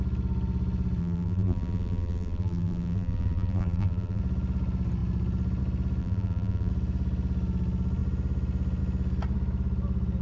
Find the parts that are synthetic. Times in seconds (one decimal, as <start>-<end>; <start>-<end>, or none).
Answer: 1.0-4.2; 6.0-6.7